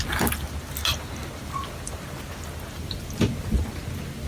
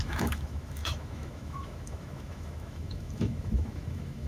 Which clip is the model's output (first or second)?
second